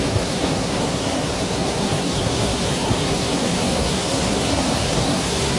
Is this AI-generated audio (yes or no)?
yes